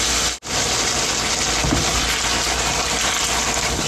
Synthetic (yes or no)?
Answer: no